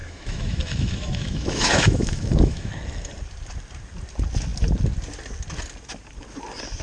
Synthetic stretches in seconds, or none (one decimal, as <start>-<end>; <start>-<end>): 0.0-2.7